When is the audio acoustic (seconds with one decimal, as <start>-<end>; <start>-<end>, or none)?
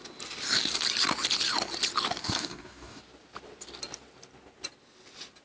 0.0-2.2; 3.0-5.4